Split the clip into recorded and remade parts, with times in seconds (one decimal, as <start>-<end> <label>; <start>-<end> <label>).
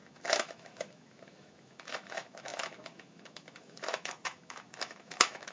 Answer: 0.0-5.5 remade